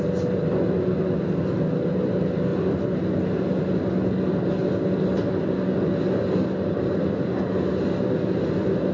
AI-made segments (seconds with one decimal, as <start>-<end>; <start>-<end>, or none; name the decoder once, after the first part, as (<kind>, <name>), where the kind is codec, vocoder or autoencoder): none